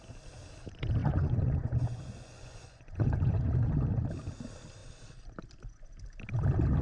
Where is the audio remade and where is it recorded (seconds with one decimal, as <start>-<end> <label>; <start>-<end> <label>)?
0.0-1.0 recorded; 1.0-3.7 remade; 3.7-6.8 recorded